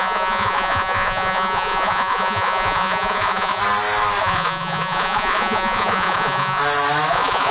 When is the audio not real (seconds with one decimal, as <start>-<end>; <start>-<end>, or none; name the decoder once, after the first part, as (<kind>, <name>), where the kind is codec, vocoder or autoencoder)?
0.0-3.6 (vocoder, Vocos); 4.2-6.6; 7.1-7.5